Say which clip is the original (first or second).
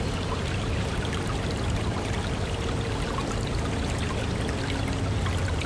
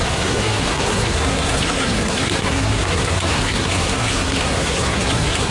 first